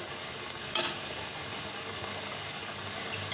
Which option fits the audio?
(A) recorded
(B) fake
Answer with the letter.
B